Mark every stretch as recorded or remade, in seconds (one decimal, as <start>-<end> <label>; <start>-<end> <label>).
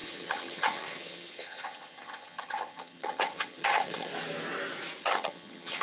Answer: 0.0-4.1 remade; 4.1-5.0 recorded; 5.0-5.8 remade